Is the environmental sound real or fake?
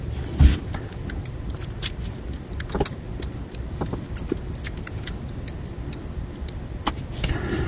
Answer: real